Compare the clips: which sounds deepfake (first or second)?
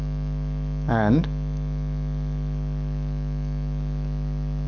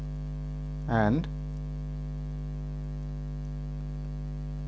first